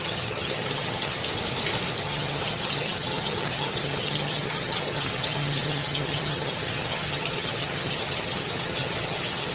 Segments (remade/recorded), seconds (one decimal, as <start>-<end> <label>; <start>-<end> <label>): 0.0-1.2 remade; 1.2-2.0 recorded; 2.0-9.5 remade